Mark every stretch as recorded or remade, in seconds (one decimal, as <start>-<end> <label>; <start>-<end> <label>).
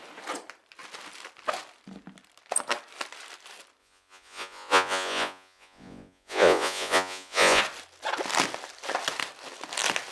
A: 0.0-3.8 recorded; 3.8-7.6 remade; 7.6-10.1 recorded